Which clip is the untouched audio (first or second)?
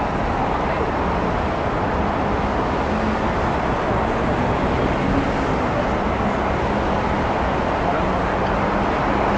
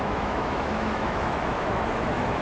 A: first